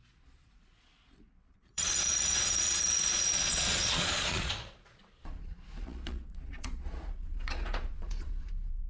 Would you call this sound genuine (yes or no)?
no